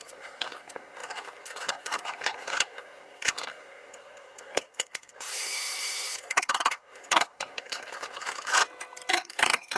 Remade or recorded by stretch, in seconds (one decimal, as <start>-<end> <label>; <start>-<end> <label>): 0.0-8.5 remade; 8.5-9.1 recorded; 9.1-9.8 remade